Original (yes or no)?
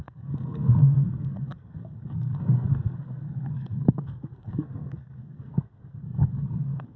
no